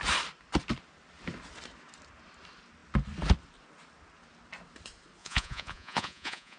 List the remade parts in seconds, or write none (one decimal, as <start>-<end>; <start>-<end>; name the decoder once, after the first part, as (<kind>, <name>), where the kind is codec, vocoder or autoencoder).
5.2-6.6 (vocoder, Vocos)